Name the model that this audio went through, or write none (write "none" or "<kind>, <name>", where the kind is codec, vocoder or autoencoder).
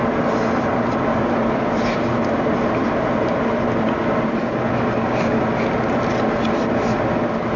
none